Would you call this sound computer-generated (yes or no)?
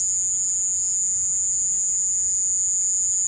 no